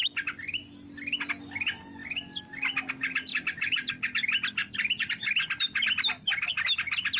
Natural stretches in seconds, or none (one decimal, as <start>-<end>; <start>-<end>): 0.0-3.3; 3.9-4.6; 5.3-7.2